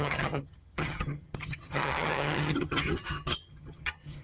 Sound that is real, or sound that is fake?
fake